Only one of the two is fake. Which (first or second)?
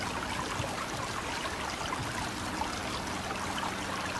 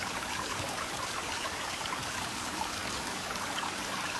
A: second